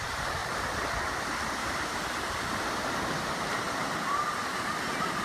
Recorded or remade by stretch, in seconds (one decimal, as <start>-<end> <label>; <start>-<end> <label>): 0.0-5.2 recorded